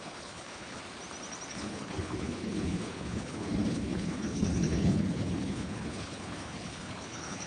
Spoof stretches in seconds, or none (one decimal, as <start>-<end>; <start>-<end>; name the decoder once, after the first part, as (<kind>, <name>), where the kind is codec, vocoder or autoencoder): 0.0-0.8 (codec, HILCodec); 1.5-7.5